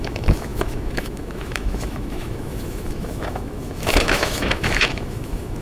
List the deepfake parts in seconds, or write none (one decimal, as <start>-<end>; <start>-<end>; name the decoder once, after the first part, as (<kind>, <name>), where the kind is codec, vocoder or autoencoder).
0.0-5.6 (autoencoder, DAC-VAE)